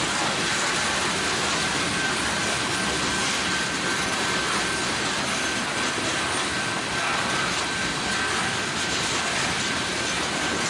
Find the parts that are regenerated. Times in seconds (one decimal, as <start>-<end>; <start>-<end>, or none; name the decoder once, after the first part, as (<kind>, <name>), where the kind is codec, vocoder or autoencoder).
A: none